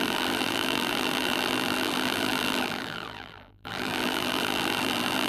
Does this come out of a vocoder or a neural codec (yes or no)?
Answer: yes